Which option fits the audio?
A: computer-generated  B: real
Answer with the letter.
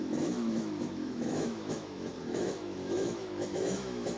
A